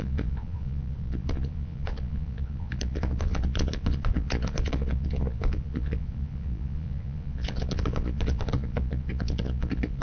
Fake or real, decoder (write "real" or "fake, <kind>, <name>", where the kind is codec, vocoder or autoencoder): fake, vocoder, Vocos